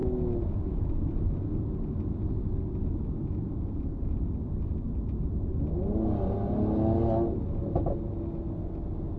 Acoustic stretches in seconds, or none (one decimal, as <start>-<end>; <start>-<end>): 0.0-9.2